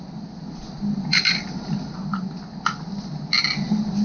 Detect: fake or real real